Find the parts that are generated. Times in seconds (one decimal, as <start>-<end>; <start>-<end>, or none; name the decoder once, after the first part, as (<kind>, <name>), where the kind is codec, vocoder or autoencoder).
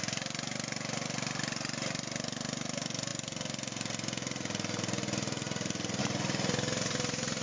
none